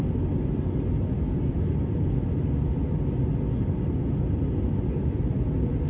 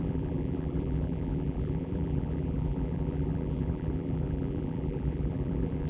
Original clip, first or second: first